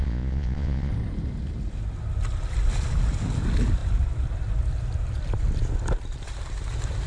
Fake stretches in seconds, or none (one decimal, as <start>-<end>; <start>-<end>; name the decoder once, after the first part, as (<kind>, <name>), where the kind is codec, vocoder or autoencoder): 0.0-0.9 (vocoder, Vocos)

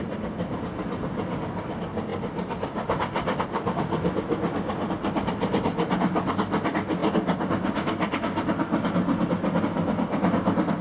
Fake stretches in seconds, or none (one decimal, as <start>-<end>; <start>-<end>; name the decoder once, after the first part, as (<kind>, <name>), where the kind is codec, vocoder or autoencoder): none

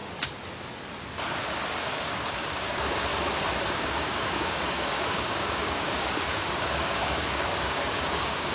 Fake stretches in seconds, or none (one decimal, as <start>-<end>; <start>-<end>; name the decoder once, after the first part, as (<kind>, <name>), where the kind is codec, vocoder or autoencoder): 1.8-3.1 (codec, DAC); 3.7-8.5